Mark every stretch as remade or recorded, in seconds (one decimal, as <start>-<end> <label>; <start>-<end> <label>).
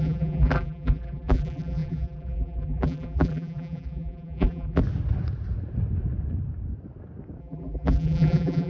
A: 0.0-4.8 remade; 4.8-7.4 recorded; 7.4-8.7 remade